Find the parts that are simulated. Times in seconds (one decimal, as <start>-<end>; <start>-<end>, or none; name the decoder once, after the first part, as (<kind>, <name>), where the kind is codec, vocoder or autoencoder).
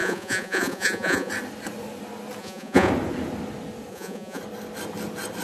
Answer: 0.0-1.3 (vocoder, Vocos); 2.4-2.9; 3.9-4.4